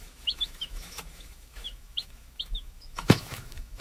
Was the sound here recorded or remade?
remade